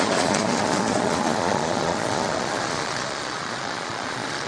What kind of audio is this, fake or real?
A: fake